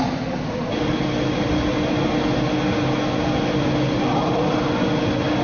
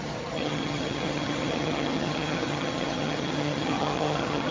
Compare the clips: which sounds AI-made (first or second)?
second